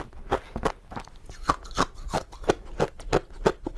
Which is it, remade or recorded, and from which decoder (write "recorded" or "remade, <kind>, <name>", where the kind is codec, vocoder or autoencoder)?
recorded